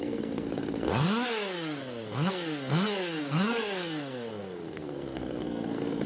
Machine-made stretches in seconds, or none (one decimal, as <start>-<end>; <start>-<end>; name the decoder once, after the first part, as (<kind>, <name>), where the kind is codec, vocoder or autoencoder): 0.0-6.1 (codec, SNAC)